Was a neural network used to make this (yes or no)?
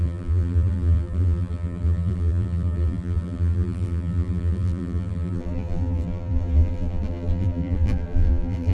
yes